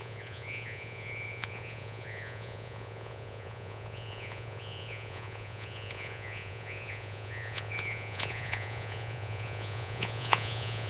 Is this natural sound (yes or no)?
no